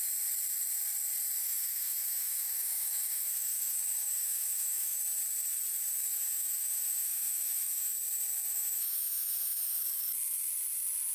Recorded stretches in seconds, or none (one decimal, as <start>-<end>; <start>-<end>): 0.0-1.4; 5.0-6.1; 7.9-8.5; 9.8-11.1